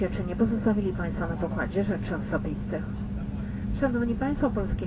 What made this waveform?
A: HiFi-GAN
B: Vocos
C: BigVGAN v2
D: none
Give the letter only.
D